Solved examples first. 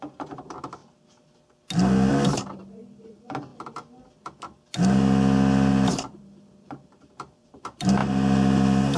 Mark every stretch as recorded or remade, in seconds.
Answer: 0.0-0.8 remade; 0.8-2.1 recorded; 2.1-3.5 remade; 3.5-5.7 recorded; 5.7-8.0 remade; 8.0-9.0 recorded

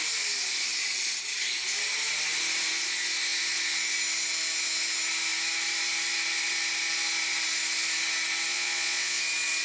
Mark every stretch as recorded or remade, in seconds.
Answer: 0.0-8.5 recorded; 8.5-9.2 remade; 9.2-9.6 recorded

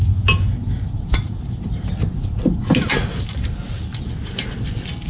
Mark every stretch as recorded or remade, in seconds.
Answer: 0.0-5.1 recorded

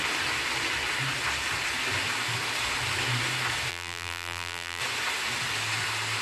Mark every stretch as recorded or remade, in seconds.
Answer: 0.0-3.7 recorded; 3.7-4.8 remade; 4.8-6.2 recorded

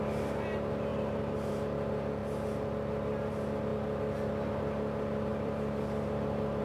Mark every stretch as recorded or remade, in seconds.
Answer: 0.0-0.9 recorded; 0.9-1.5 remade; 1.5-5.3 recorded; 5.3-6.6 remade